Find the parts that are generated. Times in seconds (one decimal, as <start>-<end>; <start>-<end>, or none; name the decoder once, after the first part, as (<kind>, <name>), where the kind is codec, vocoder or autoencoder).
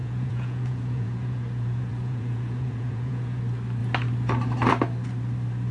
0.0-3.4 (vocoder, Vocos)